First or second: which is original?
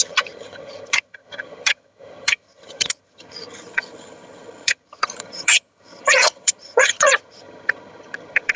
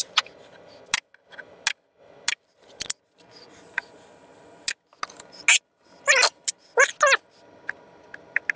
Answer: second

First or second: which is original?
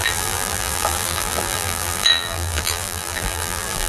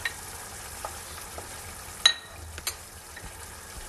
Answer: second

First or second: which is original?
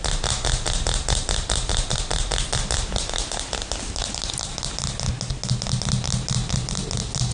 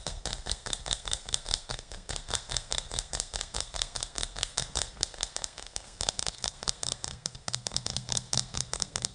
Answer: first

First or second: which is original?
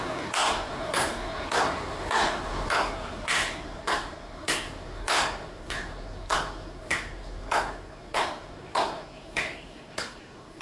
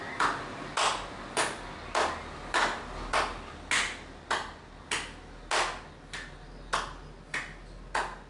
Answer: second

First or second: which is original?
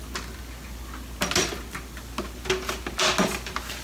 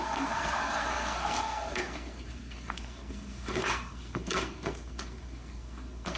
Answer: first